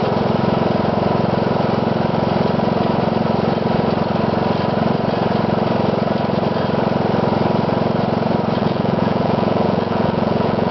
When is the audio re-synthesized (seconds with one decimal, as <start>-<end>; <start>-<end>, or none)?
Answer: 8.6-10.7